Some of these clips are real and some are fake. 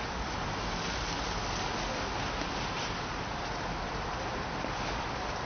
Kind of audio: real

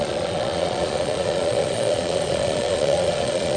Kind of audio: fake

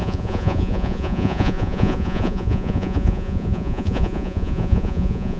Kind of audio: fake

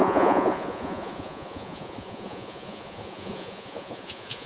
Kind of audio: fake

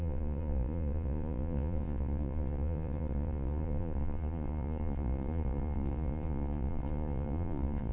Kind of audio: fake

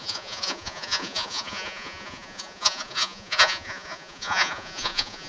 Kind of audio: fake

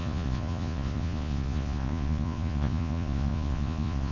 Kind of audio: fake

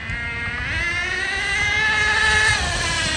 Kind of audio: real